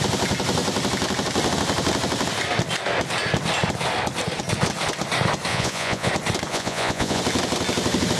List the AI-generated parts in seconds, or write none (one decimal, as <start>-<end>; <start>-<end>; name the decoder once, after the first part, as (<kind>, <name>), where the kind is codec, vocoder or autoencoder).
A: 5.5-6.1 (vocoder, Vocos); 6.5-7.2